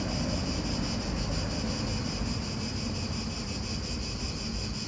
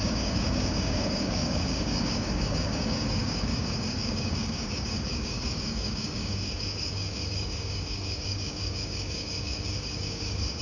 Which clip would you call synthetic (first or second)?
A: second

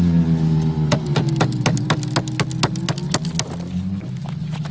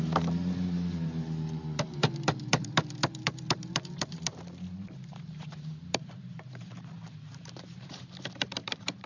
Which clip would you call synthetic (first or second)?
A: second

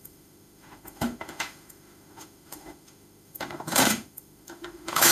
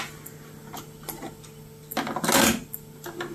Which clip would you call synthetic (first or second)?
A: first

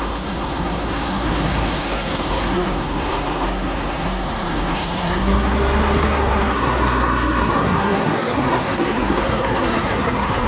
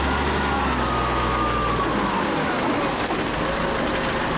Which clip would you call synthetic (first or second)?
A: first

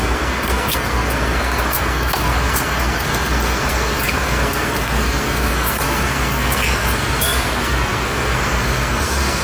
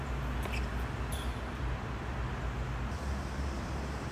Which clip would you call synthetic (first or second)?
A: first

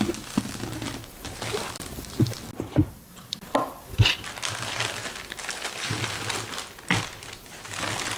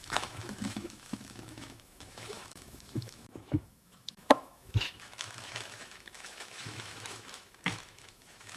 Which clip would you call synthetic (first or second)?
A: second